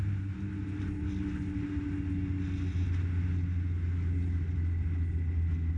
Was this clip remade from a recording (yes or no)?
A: no